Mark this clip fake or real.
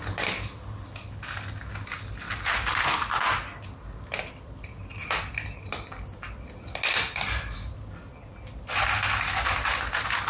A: real